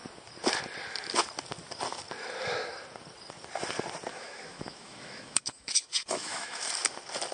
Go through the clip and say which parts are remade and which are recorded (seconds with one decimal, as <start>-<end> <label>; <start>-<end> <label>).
0.0-4.1 recorded; 4.1-6.6 remade; 6.6-7.3 recorded